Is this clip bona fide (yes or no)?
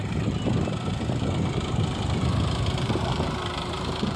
no